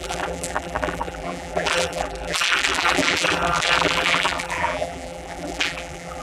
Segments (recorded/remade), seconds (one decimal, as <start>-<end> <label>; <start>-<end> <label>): 0.0-6.2 remade